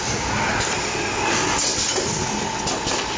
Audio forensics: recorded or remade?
recorded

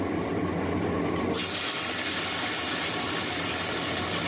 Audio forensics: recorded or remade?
recorded